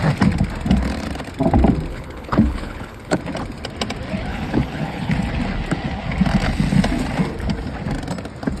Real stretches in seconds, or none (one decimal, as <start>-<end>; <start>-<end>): 0.0-1.9; 3.2-4.3; 5.1-8.6